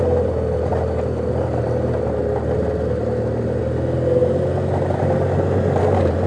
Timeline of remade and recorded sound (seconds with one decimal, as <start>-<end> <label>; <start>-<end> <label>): 0.0-6.3 recorded